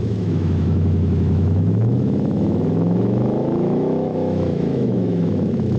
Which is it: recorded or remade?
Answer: remade